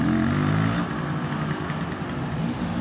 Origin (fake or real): real